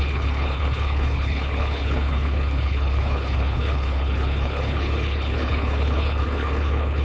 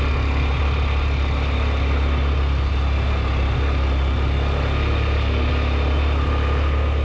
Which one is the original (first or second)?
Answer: second